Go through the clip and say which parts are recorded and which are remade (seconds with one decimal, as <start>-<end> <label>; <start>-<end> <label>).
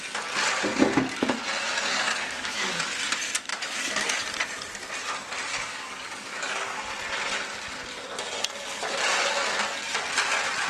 0.0-1.9 recorded; 1.9-2.8 remade; 2.8-3.5 recorded; 3.5-4.2 remade; 4.2-5.5 recorded; 5.5-6.8 remade; 6.8-10.7 recorded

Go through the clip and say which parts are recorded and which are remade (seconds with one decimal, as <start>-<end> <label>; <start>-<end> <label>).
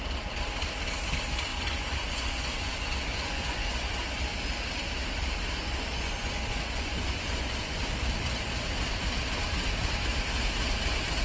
0.0-1.5 recorded; 1.5-2.7 remade; 2.7-3.1 recorded; 3.1-3.9 remade; 3.9-5.6 recorded; 5.6-7.8 remade; 7.8-11.2 recorded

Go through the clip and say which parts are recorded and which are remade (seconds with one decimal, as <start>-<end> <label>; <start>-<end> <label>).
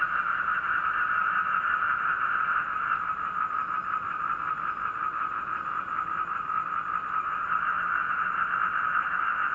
0.0-9.5 recorded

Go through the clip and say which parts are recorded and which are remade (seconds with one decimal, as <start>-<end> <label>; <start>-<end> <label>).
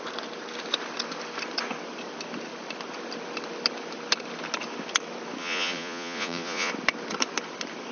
0.0-5.4 recorded; 5.4-6.7 remade; 6.7-7.9 recorded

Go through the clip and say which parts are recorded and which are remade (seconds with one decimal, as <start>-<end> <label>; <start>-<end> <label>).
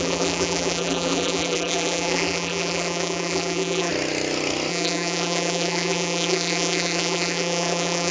0.0-3.9 remade; 3.9-4.7 recorded; 4.7-8.1 remade